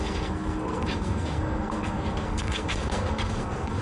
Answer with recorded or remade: remade